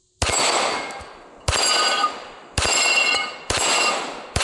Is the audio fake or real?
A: real